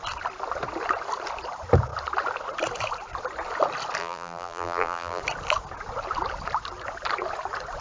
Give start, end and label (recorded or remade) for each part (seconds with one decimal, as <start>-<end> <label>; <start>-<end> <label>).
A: 0.0-4.0 recorded; 4.0-5.2 remade; 5.2-7.8 recorded